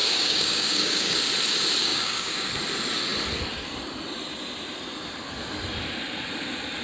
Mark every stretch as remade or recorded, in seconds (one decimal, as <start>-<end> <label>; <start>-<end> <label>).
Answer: 0.0-1.2 remade; 1.2-1.8 recorded; 1.8-2.5 remade; 2.5-6.8 recorded